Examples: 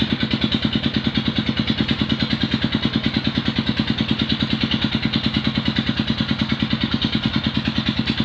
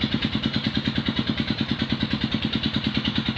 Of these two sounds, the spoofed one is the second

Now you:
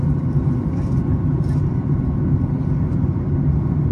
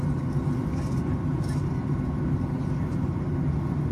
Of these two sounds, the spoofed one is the first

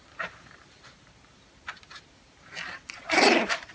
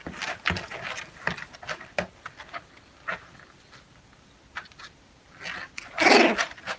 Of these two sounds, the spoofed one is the first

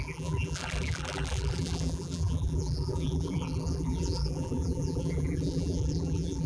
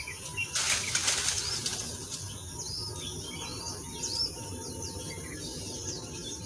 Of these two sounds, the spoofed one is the first